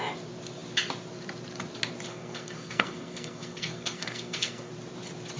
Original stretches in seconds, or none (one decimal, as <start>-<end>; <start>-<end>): 0.0-2.1; 4.7-5.4